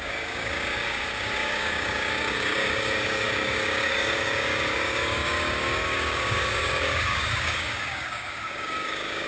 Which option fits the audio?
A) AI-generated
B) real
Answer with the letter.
A